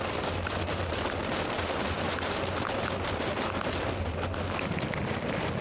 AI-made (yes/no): no